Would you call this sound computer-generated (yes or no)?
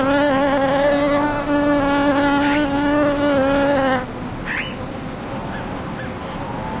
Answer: no